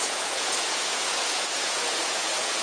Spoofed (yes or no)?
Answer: yes